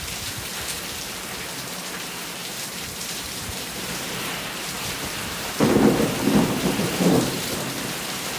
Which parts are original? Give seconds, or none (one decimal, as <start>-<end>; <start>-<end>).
0.0-2.4; 7.4-8.4